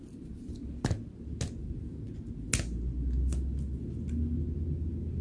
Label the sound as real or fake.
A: real